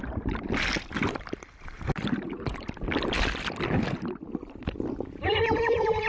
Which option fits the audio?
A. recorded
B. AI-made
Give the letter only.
A